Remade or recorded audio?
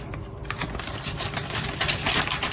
remade